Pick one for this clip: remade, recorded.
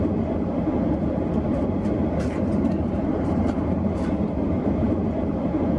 remade